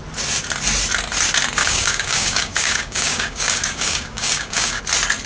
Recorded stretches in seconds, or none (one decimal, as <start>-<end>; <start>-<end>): 0.0-1.6; 4.8-5.3